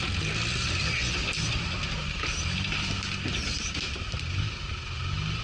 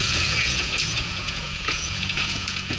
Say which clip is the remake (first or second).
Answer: second